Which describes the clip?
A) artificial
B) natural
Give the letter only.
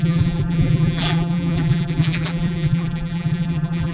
A